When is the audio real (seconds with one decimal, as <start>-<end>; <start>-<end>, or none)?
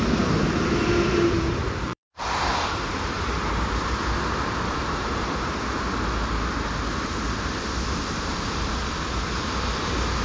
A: 0.0-1.5; 6.0-8.3; 8.8-10.2